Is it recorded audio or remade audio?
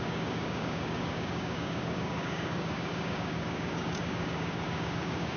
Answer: remade